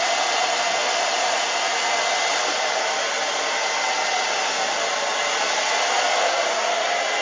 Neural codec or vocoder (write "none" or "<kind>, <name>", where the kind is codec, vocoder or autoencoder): none